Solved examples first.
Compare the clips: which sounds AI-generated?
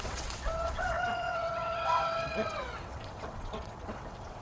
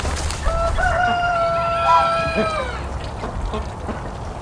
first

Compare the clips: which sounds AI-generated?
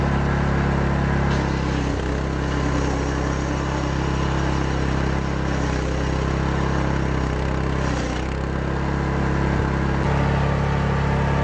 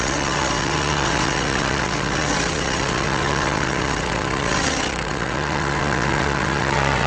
second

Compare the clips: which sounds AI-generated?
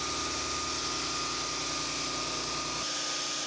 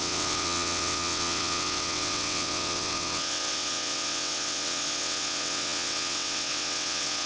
second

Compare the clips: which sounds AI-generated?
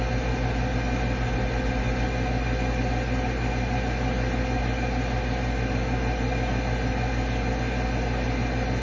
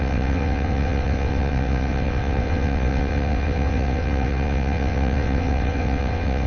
second